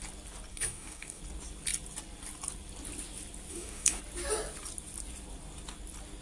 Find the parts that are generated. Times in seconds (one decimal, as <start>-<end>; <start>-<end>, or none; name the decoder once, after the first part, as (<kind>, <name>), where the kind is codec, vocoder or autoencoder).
0.5-1.2 (codec, DAC); 3.5-4.0

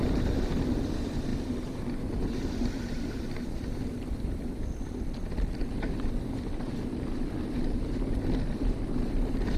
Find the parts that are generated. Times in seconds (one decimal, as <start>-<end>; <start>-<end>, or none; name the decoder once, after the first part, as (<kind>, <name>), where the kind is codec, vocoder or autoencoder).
none

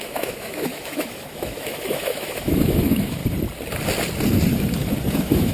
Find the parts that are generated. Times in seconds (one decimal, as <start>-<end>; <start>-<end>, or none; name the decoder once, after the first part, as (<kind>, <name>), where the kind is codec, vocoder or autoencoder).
0.0-3.2 (autoencoder, DAC-VAE); 5.1-5.5

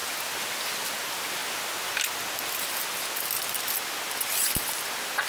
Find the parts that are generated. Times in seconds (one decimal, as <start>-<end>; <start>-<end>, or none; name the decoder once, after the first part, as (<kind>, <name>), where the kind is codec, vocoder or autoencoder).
none

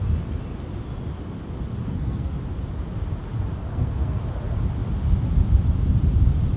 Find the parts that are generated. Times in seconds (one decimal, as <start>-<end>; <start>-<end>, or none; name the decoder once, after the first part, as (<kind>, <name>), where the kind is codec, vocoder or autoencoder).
1.8-2.4 (codec, SNAC); 3.6-4.2

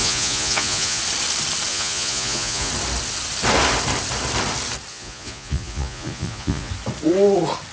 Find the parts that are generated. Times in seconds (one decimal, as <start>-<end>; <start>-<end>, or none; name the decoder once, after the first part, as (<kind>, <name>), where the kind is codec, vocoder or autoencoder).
0.0-1.0 (vocoder, Vocos); 1.7-2.7; 4.9-6.7

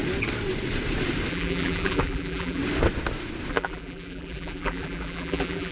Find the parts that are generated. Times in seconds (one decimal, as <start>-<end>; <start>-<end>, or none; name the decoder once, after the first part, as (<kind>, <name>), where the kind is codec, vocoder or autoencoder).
1.3-2.6 (vocoder, BigVGAN v2); 3.5-5.7